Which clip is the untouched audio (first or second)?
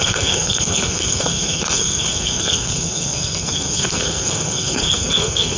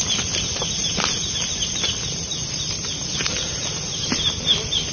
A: second